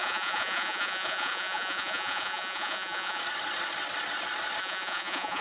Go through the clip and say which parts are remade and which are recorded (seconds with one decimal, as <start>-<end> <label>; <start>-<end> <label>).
0.0-3.2 remade; 3.2-4.6 recorded; 4.6-5.4 remade